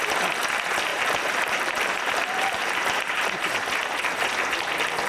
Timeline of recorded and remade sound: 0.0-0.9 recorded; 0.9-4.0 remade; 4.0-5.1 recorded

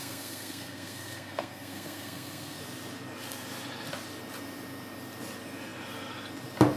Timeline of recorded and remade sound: 0.0-2.6 remade; 2.6-6.8 recorded

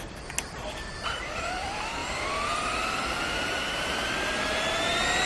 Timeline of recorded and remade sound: 0.0-5.3 recorded